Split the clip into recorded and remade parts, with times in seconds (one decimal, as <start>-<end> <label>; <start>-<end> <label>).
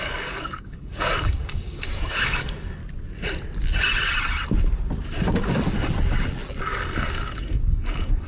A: 0.0-2.8 remade; 2.8-6.6 recorded; 6.6-8.3 remade